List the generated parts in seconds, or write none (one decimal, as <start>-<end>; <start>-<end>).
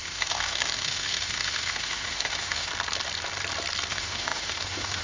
0.0-2.7; 3.9-5.0